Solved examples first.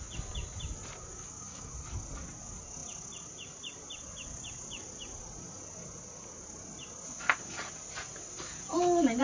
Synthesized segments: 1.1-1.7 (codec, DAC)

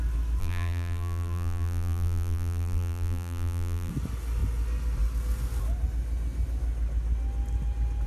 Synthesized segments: 0.4-3.9 (vocoder, BigVGAN v2)

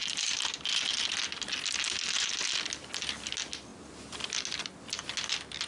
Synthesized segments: none

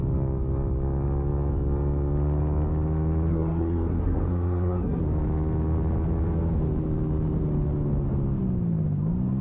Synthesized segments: 3.3-5.0 (codec, SNAC)

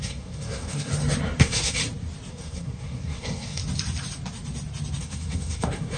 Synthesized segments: 0.0-0.9 (codec, SNAC); 1.4-1.8; 2.3-3.6; 5.0-6.0

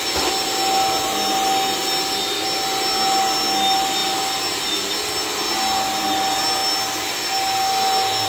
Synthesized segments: none

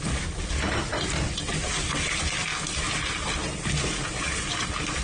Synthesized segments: none

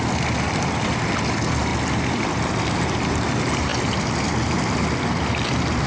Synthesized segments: none